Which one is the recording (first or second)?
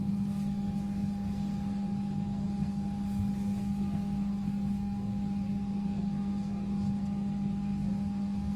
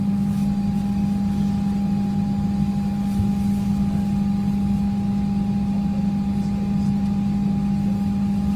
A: second